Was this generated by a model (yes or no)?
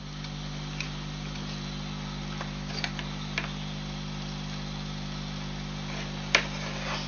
no